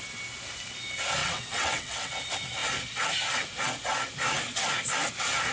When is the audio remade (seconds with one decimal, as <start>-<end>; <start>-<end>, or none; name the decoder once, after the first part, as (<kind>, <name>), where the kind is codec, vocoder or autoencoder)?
1.2-2.1 (vocoder, WaveNeXt)